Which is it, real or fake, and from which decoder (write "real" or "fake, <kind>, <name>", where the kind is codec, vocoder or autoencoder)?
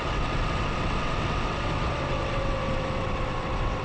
fake, vocoder, WaveNeXt